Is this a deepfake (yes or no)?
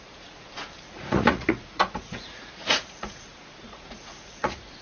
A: yes